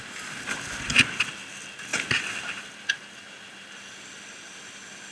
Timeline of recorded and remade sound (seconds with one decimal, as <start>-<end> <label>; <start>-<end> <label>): 0.0-5.1 recorded